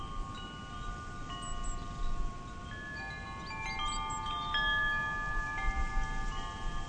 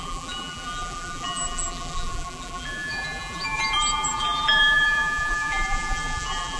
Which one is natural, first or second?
first